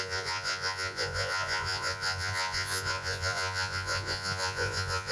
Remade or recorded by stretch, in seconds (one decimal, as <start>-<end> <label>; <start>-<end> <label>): 0.0-5.1 remade